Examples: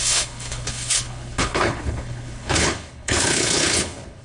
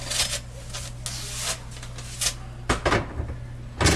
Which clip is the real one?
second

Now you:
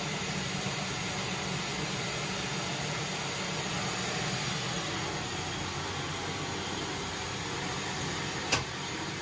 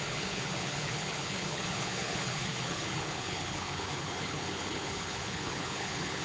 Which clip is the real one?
first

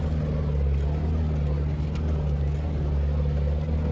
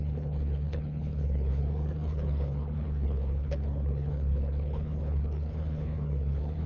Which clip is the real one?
first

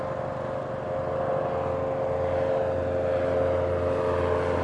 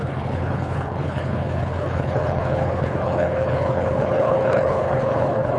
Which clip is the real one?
first